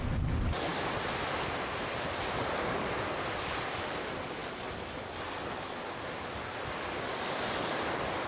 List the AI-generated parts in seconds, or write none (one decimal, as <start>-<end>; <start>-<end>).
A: none